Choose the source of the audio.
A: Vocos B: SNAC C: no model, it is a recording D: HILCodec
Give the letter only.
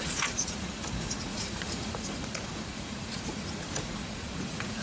A